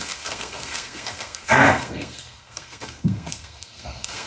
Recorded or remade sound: remade